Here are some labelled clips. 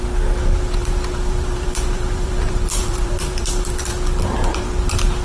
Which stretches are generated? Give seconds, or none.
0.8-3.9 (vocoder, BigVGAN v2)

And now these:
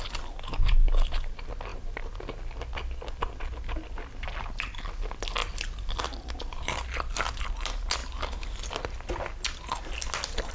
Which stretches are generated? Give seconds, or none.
none

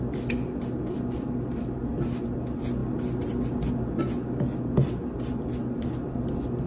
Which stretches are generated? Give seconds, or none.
none

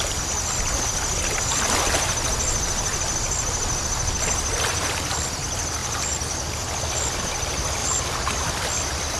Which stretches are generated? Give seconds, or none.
5.8-6.8 (vocoder, BigVGAN v2); 7.8-8.4

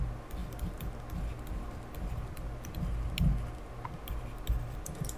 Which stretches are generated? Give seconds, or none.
none

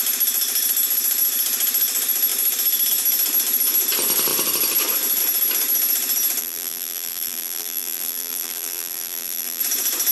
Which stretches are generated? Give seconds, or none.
6.4-9.6 (vocoder, BigVGAN v2)

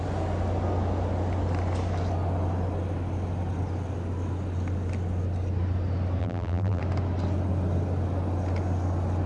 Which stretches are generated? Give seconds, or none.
6.2-6.8 (vocoder, BigVGAN v2)

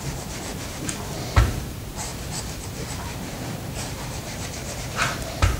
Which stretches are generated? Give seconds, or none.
0.0-0.5 (vocoder, BigVGAN v2); 1.4-5.6